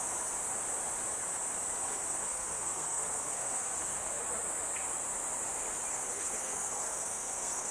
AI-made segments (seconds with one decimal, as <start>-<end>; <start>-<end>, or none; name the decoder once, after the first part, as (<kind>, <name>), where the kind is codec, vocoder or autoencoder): 2.1-4.1 (codec, SNAC); 5.9-7.7